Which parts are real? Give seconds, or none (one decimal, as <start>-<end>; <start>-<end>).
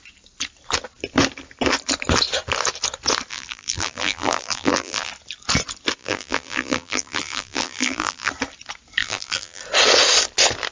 0.0-3.3; 5.1-6.0; 8.3-9.0; 9.6-10.7